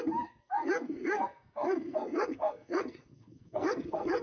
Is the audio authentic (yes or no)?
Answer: no